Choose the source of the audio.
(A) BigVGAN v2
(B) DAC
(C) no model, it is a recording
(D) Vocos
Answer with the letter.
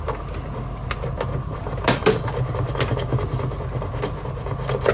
C